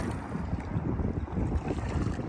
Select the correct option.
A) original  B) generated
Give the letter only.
A